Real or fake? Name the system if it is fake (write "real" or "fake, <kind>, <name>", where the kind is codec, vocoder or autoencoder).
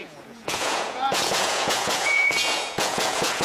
fake, vocoder, Vocos